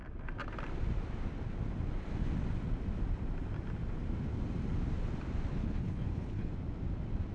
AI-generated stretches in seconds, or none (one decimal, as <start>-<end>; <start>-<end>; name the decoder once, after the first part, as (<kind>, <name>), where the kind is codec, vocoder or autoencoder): 5.5-6.5 (codec, HILCodec)